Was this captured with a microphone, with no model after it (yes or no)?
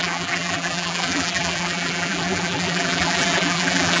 no